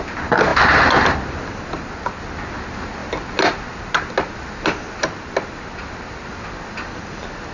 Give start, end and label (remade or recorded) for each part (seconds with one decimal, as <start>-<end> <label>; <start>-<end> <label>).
0.0-7.5 recorded

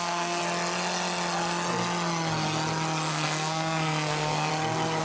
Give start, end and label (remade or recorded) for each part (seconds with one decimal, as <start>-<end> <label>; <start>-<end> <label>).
0.0-0.4 remade; 0.4-3.1 recorded; 3.1-4.5 remade; 4.5-5.0 recorded